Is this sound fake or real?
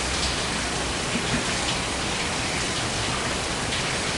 real